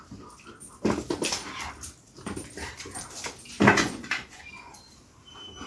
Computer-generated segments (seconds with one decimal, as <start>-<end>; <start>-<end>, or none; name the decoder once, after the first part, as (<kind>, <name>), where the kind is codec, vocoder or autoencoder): 3.7-4.8 (vocoder, Vocos)